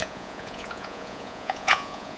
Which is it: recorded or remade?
remade